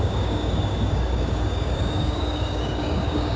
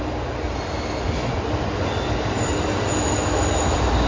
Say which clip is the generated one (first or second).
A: first